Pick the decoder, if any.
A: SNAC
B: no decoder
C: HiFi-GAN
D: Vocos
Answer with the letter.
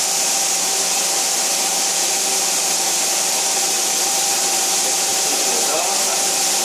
B